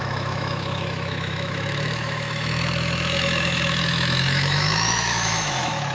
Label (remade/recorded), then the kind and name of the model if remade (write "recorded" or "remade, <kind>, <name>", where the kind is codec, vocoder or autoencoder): remade, autoencoder, DAC-VAE